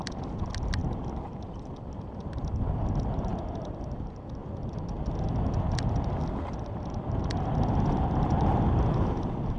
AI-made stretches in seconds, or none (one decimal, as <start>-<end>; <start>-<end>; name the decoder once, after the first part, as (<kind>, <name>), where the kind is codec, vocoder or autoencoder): none